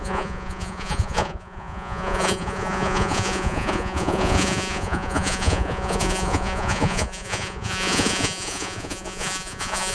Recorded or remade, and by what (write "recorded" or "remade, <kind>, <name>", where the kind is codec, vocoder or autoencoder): remade, vocoder, Vocos